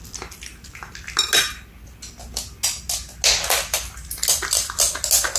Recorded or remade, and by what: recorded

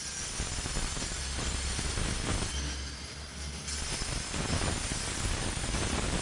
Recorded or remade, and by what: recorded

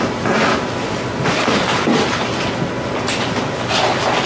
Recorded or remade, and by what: recorded